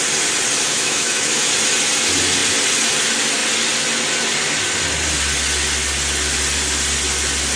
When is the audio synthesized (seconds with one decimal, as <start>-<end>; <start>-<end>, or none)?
0.7-1.5

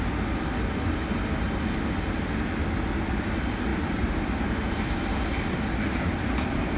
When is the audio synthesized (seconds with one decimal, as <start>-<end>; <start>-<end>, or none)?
3.7-5.0

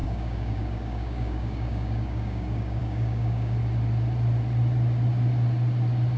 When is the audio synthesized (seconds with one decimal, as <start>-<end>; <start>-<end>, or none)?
0.0-3.6

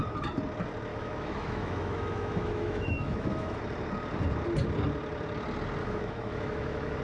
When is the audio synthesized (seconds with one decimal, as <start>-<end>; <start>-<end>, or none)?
0.9-3.6; 5.8-7.0

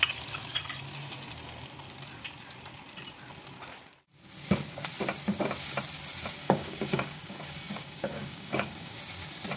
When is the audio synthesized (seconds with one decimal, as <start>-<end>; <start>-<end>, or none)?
6.4-9.0

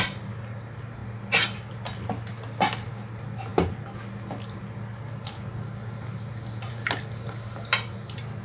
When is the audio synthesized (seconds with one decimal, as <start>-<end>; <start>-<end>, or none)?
none